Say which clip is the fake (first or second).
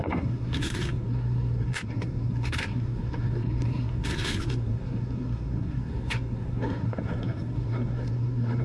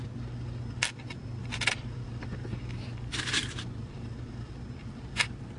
first